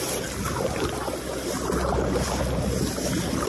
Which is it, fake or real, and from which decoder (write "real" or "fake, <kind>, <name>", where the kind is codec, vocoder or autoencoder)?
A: real